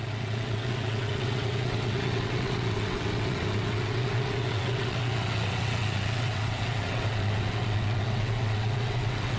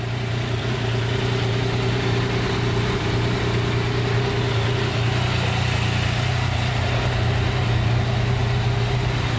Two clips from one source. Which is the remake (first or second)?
first